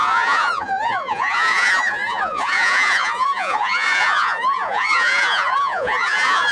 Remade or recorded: remade